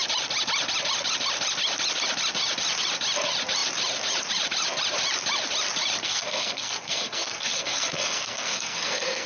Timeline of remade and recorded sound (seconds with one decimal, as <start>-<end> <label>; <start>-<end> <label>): 0.0-6.0 recorded; 6.0-9.3 remade